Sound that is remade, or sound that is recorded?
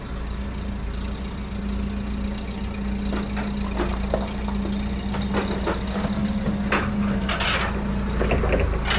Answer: recorded